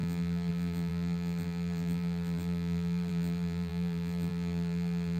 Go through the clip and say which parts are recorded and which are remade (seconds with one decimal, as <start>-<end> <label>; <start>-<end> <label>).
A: 0.0-5.2 remade